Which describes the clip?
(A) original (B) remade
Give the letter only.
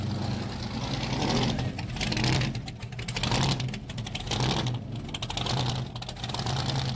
A